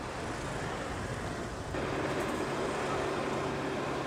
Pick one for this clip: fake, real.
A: real